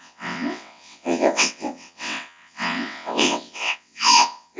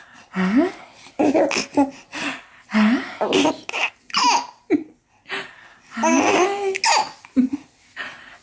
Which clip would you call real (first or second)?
second